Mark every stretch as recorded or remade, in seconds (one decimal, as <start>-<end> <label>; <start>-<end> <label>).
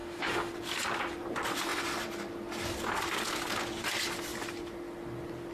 0.0-0.5 remade; 0.5-5.5 recorded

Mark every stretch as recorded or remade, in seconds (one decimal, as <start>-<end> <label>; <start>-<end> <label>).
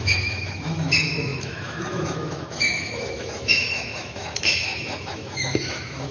0.0-6.1 remade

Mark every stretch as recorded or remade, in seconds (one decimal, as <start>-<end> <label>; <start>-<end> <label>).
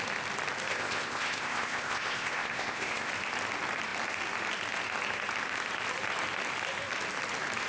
0.0-0.7 recorded; 0.7-3.1 remade; 3.1-7.7 recorded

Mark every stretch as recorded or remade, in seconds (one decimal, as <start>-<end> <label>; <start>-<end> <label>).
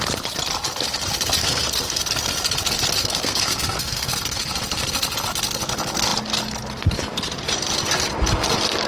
0.0-1.4 recorded; 1.4-2.0 remade; 2.0-3.0 recorded; 3.0-4.1 remade; 4.1-8.9 recorded